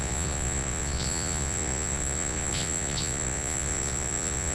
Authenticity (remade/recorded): remade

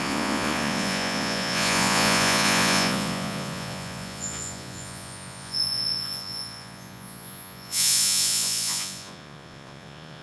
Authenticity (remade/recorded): remade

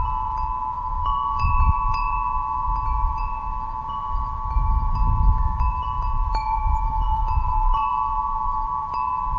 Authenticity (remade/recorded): remade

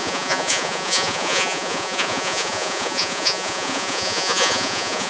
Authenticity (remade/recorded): remade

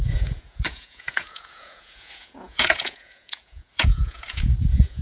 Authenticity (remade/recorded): remade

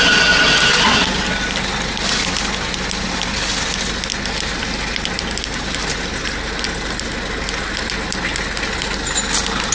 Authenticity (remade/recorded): recorded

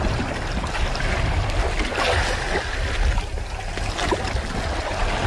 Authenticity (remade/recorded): recorded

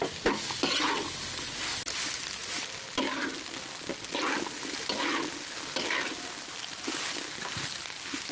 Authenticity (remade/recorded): recorded